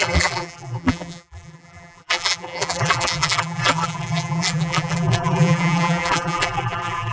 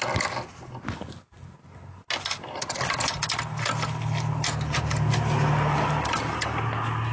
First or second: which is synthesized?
first